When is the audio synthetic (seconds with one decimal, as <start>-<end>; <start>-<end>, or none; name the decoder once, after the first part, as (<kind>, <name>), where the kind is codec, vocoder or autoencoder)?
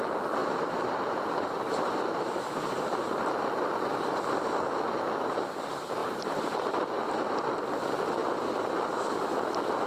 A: 0.4-3.4 (vocoder, BigVGAN v2); 6.0-7.5